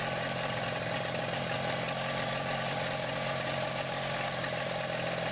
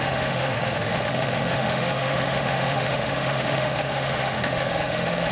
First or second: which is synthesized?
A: second